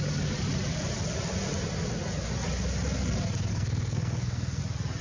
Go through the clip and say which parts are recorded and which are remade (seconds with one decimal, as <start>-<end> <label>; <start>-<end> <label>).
0.0-3.5 recorded; 3.5-4.6 remade; 4.6-5.0 recorded